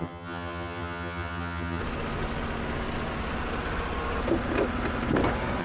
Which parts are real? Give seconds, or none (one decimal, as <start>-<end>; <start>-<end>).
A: 1.8-5.6